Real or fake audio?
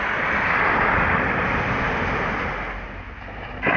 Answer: real